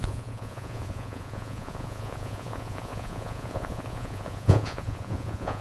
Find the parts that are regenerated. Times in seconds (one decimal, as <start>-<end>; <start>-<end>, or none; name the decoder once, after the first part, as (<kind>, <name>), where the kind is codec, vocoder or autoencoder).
0.0-5.6 (vocoder, Vocos)